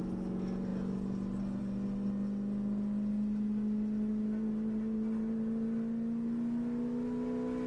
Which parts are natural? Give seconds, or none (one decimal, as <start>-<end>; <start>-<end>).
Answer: 0.0-7.7